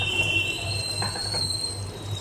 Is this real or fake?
fake